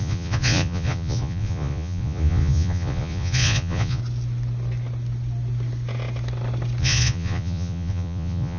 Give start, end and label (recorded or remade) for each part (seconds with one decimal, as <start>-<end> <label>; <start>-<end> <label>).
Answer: 0.0-4.0 remade; 4.0-6.8 recorded; 6.8-8.6 remade